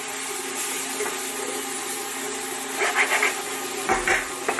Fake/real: real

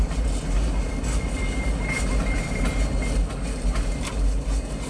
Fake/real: real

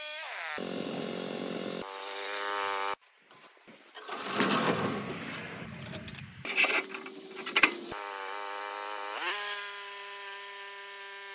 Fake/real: real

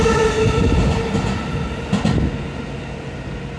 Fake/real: real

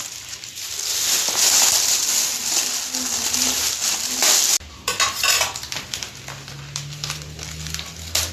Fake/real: real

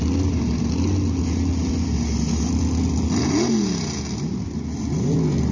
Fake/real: real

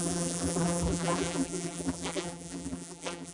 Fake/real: fake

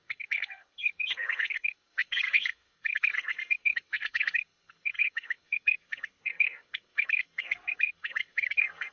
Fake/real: fake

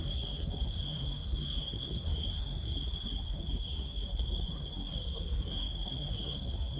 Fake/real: fake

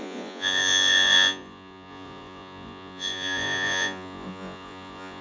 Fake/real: fake